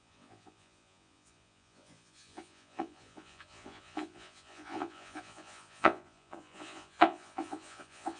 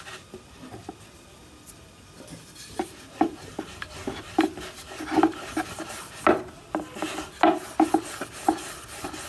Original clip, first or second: second